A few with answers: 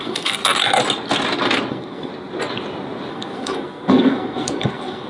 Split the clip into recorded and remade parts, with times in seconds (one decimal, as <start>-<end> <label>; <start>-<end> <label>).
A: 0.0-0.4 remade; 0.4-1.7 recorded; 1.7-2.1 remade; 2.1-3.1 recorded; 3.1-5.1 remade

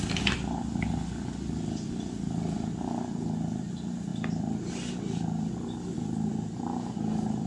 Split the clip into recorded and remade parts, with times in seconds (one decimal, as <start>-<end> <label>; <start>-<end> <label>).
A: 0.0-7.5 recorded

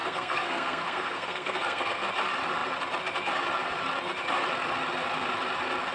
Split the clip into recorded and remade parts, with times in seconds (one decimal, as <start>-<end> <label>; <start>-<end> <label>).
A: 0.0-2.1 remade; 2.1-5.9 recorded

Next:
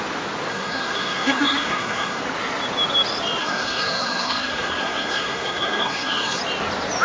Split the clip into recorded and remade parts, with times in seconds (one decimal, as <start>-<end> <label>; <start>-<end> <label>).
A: 0.0-0.5 recorded; 0.5-2.2 remade; 2.2-3.4 recorded; 3.4-6.4 remade; 6.4-7.0 recorded